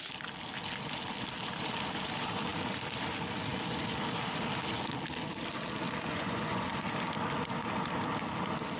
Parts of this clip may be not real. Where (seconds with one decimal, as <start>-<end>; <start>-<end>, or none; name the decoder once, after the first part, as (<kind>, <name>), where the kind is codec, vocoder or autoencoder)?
6.1-6.7 (vocoder, Vocos)